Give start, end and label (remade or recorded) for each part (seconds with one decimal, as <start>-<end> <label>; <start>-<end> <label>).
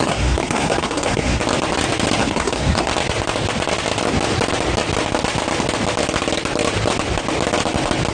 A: 0.0-1.4 remade; 1.4-2.2 recorded; 2.2-2.9 remade; 2.9-8.1 recorded